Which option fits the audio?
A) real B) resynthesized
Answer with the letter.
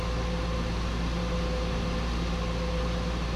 A